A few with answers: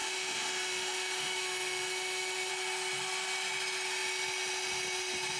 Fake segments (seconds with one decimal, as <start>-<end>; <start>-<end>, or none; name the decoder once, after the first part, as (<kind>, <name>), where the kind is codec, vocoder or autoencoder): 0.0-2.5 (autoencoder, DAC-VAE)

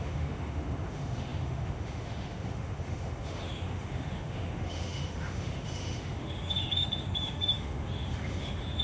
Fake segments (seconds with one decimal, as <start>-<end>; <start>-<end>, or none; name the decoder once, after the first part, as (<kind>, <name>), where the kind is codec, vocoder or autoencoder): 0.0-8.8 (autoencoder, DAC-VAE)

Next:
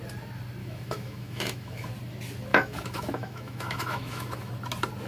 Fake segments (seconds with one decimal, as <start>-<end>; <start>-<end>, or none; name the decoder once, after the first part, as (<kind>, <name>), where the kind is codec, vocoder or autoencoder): 0.6-1.9 (autoencoder, DAC-VAE); 2.5-4.5